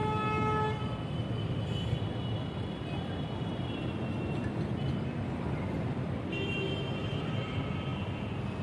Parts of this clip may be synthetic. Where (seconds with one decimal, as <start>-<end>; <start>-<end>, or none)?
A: none